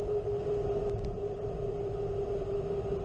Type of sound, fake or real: real